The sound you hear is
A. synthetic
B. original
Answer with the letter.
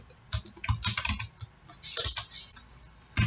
B